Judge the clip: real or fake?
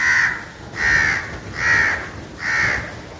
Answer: real